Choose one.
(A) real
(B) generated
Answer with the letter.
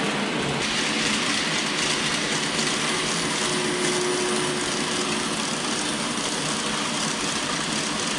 A